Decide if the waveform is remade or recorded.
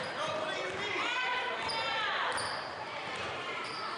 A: remade